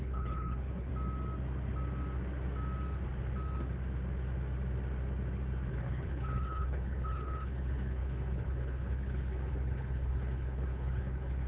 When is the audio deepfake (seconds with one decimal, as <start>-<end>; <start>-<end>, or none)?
0.0-0.9; 5.7-11.5

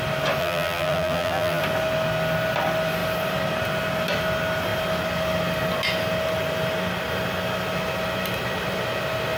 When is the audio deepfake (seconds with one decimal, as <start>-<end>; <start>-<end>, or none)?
0.4-1.6

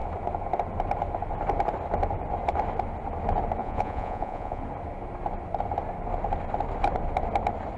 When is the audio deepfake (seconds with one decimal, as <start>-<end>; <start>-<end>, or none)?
3.6-4.6

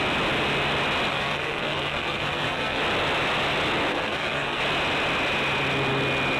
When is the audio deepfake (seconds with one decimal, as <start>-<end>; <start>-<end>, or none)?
1.1-2.8; 3.9-4.6

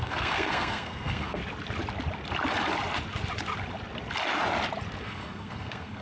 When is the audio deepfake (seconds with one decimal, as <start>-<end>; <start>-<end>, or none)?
0.0-1.4; 5.0-6.0